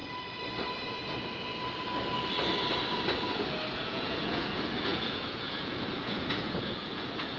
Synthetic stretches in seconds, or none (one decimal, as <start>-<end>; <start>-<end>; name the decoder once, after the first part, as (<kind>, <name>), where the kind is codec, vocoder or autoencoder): 3.7-7.4 (vocoder, Vocos)